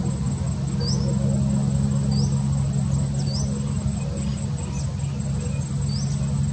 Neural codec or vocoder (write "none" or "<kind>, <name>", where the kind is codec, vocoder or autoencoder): none